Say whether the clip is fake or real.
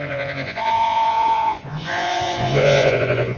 fake